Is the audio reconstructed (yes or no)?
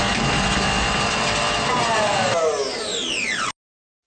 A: no